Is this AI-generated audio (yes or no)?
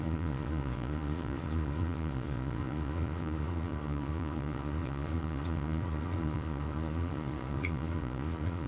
yes